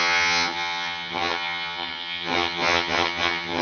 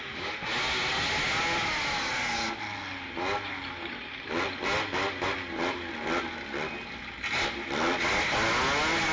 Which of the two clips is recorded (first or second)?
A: second